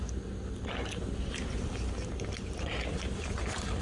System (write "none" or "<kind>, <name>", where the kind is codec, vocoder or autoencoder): none